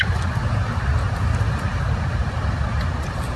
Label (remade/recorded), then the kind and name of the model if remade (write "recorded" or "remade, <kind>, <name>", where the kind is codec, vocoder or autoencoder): recorded